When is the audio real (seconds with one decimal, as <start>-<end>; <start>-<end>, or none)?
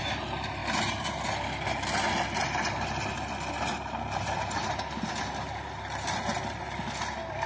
0.0-7.5